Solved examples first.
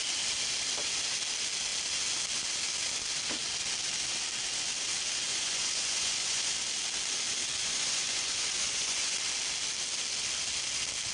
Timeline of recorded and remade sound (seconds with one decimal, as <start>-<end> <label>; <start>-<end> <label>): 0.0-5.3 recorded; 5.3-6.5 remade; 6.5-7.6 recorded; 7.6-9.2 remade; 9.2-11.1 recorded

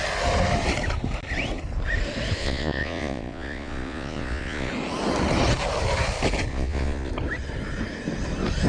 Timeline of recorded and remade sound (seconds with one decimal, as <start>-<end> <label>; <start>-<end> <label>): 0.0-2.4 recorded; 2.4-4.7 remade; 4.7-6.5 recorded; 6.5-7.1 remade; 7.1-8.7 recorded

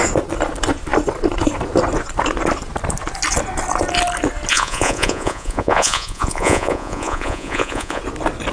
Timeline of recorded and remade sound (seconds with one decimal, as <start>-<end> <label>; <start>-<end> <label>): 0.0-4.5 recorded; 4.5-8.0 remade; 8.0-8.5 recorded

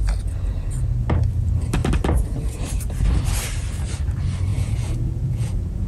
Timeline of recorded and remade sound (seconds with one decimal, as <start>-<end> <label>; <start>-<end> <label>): 0.0-4.5 recorded; 4.5-5.9 remade

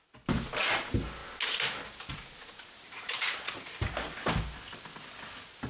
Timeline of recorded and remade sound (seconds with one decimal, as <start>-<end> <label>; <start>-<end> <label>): 0.0-5.7 recorded

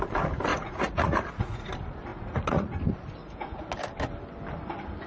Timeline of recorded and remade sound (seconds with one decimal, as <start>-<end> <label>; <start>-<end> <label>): 0.0-0.5 recorded; 0.5-1.7 remade; 1.7-2.1 recorded; 2.1-2.7 remade; 2.7-3.2 recorded; 3.2-3.7 remade; 3.7-5.1 recorded